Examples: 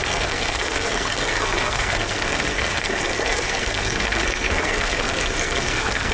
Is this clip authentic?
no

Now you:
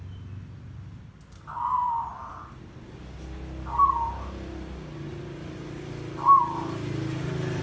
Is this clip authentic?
yes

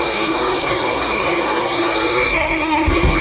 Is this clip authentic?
no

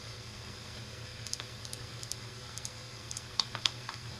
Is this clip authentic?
no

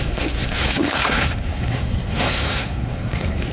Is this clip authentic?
no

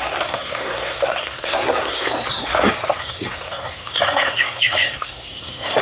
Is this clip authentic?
no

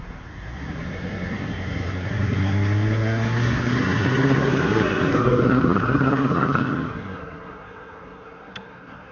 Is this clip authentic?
no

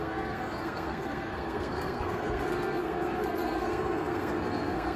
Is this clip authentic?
no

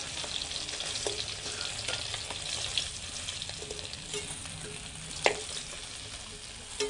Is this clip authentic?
yes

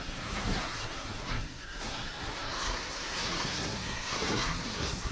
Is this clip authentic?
no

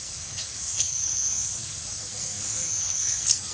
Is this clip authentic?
no